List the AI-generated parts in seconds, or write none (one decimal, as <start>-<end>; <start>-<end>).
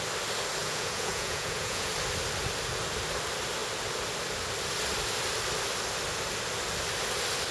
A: 0.6-1.9